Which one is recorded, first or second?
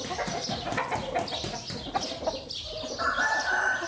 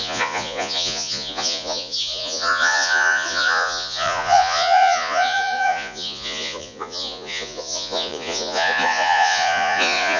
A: first